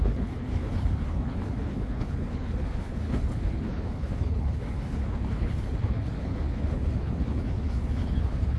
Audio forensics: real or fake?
fake